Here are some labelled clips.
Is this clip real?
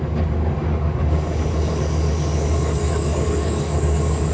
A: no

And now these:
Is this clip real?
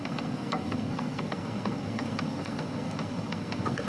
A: no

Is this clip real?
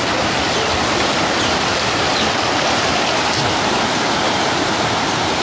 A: yes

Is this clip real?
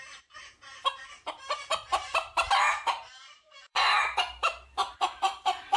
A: no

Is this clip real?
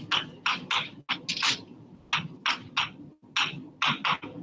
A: yes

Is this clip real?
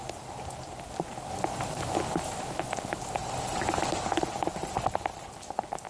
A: yes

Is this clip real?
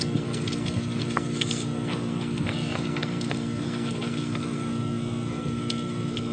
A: no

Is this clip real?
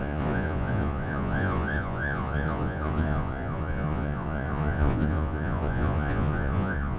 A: no